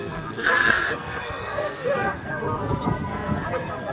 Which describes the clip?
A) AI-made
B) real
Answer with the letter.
A